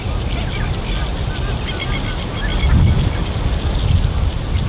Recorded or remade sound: recorded